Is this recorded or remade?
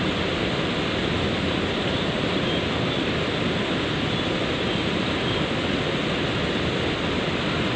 recorded